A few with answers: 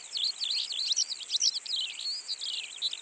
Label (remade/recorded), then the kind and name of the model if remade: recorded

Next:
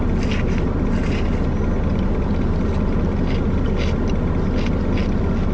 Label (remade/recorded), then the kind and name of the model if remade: recorded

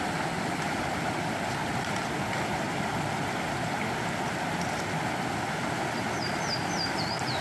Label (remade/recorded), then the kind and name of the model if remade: recorded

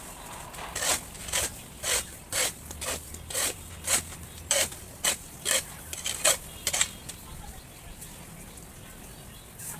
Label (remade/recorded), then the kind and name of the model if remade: remade, vocoder, BigVGAN v2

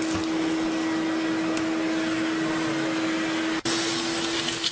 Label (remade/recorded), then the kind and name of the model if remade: recorded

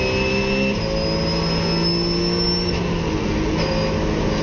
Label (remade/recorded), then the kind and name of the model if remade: recorded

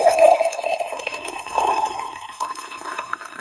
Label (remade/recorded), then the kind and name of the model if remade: remade, codec, SNAC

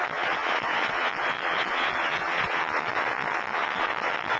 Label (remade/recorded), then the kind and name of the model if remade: remade, vocoder, Vocos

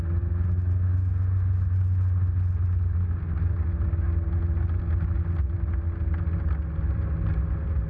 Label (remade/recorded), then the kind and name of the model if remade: recorded